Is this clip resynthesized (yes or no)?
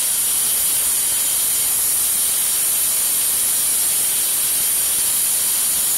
no